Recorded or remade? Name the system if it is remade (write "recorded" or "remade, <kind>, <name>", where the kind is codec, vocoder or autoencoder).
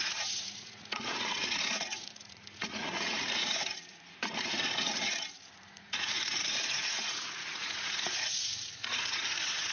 remade, vocoder, Vocos